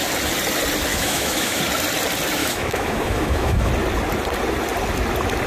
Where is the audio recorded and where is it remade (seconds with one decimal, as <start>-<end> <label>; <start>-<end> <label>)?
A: 0.0-0.9 recorded; 0.9-1.6 remade; 1.6-2.4 recorded; 2.4-3.7 remade; 3.7-5.5 recorded